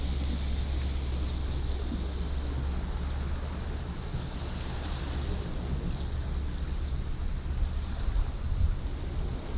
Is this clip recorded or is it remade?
recorded